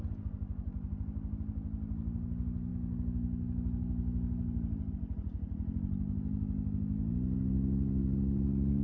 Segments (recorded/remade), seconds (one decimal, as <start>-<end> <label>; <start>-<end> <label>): 0.0-8.8 recorded